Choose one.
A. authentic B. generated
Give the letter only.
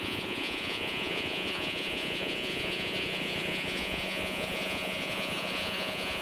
B